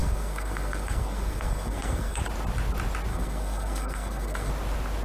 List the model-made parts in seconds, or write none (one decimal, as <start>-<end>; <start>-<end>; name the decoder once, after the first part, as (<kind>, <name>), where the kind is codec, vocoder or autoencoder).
0.0-2.2 (codec, SNAC); 3.1-4.5